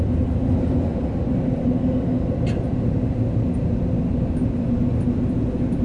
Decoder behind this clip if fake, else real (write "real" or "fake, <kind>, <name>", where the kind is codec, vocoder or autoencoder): real